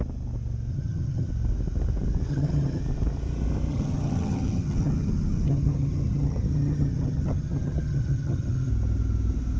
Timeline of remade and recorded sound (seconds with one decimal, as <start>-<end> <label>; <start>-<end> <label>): 0.0-0.7 recorded; 0.7-1.3 remade; 1.3-2.3 recorded; 2.3-2.8 remade; 2.8-3.7 recorded; 3.7-8.7 remade; 8.7-9.6 recorded